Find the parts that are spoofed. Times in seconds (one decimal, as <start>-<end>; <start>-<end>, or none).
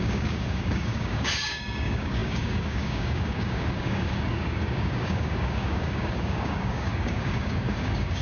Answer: 0.0-8.2